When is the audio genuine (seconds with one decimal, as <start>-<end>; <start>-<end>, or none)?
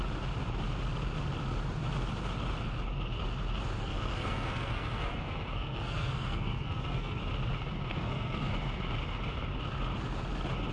0.0-3.8; 7.2-7.9; 8.5-10.7